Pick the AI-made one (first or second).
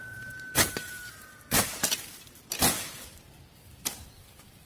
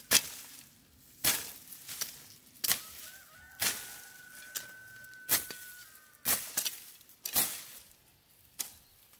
first